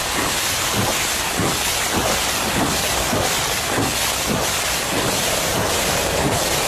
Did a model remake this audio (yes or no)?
no